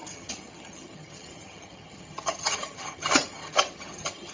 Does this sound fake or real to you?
fake